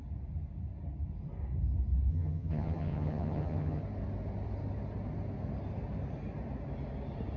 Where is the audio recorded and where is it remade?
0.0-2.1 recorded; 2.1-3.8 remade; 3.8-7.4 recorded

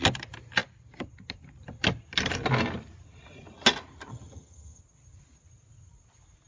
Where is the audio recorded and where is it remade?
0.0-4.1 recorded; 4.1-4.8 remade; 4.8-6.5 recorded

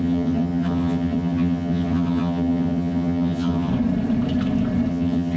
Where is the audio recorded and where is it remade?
0.0-3.7 remade; 3.7-4.9 recorded; 4.9-5.4 remade

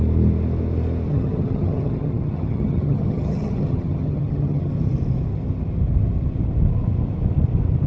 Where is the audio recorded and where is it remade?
0.0-1.1 recorded; 1.1-4.7 remade; 4.7-7.9 recorded

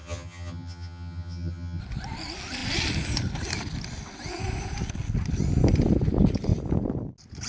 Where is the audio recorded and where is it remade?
0.0-1.8 remade; 1.8-7.5 recorded

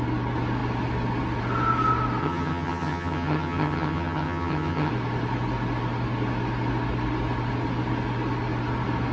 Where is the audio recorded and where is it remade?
0.0-2.2 recorded; 2.2-4.9 remade; 4.9-9.1 recorded

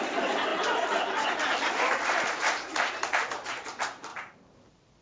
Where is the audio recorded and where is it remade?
0.0-5.0 recorded